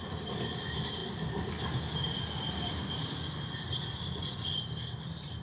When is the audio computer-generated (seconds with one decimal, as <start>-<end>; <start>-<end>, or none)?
none